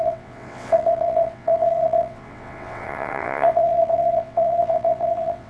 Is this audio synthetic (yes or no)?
yes